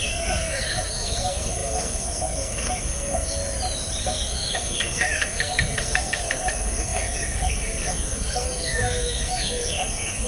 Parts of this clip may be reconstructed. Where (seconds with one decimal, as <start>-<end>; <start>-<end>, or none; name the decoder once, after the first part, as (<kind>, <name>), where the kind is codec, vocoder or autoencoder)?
0.0-3.4 (codec, SNAC); 4.0-10.3